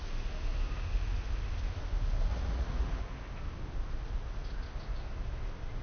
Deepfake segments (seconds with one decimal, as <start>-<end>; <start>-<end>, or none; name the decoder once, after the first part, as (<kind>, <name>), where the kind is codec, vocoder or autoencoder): 2.3-3.0 (vocoder, Vocos)